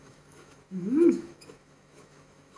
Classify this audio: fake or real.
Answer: fake